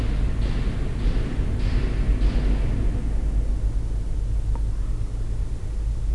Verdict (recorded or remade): recorded